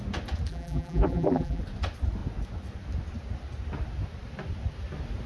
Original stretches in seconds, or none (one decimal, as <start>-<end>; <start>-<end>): 0.0-0.5; 1.6-5.3